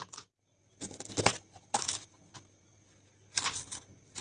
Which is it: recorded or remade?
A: recorded